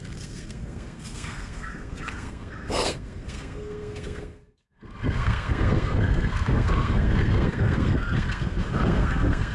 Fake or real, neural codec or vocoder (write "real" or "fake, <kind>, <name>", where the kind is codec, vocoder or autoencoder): fake, codec, SNAC